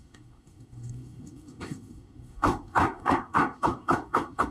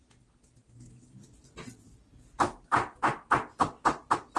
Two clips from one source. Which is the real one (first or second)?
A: second